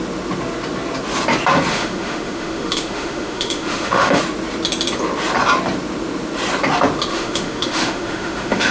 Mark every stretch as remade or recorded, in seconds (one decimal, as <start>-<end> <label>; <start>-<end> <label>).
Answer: 0.0-1.7 recorded; 1.7-4.2 remade; 4.2-7.1 recorded; 7.1-8.7 remade